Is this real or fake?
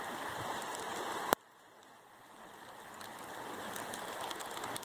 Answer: real